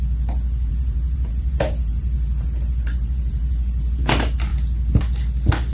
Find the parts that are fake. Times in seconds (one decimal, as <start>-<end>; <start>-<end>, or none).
0.7-4.1